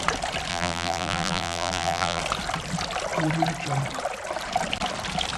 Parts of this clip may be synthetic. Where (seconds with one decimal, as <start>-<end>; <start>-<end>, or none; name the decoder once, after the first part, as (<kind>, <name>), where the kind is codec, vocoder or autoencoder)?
0.5-2.2 (vocoder, BigVGAN v2)